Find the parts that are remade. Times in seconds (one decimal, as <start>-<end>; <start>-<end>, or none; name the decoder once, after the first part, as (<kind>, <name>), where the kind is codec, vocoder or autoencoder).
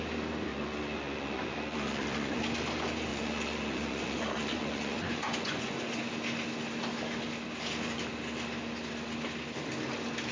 0.5-2.4 (vocoder, Vocos); 3.1-5.8